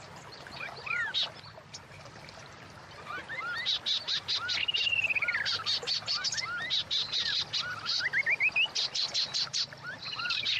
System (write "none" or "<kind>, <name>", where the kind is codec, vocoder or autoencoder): none